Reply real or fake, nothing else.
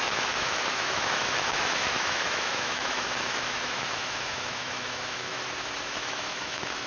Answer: fake